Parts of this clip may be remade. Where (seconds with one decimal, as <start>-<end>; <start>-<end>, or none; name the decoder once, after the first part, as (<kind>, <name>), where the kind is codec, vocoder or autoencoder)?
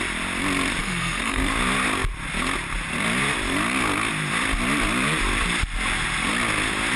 0.8-1.4 (codec, SNAC)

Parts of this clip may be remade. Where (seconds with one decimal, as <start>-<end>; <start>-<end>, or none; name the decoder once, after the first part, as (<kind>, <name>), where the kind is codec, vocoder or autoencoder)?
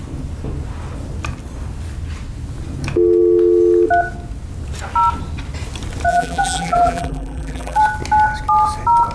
6.1-7.8 (vocoder, BigVGAN v2)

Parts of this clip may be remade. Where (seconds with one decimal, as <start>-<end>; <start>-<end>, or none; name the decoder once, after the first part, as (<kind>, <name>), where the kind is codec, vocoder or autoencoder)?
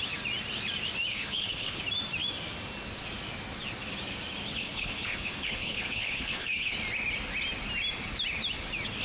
1.1-1.8 (codec, HILCodec); 4.5-6.7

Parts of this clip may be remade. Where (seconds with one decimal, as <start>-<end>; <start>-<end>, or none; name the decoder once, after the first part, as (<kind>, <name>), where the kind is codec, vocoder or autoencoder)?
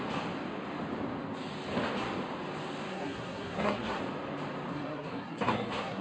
2.9-4.0 (codec, SNAC); 4.7-6.0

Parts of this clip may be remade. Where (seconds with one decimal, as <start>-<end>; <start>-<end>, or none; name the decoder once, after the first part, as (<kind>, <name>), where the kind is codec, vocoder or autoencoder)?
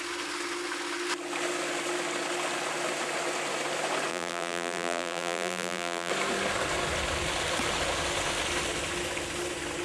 4.1-6.1 (vocoder, BigVGAN v2)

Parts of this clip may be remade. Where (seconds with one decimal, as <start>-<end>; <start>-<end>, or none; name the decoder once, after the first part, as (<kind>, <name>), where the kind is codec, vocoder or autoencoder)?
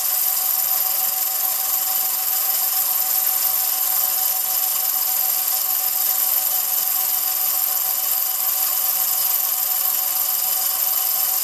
1.5-2.9 (vocoder, BigVGAN v2)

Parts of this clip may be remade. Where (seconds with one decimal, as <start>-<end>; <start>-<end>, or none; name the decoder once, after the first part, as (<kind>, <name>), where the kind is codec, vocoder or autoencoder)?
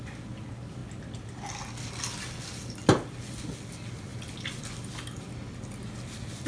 none